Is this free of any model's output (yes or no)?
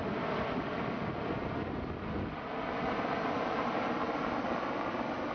yes